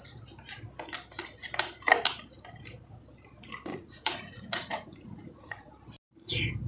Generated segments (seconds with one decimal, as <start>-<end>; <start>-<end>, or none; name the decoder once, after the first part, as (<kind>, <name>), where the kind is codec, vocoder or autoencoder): 3.7-5.7 (vocoder, Vocos)